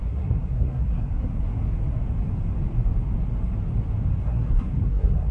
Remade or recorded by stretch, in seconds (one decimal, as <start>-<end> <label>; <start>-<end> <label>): 0.0-1.6 remade; 1.6-4.2 recorded; 4.2-5.3 remade